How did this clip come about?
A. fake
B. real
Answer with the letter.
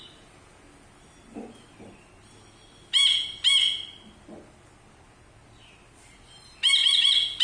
B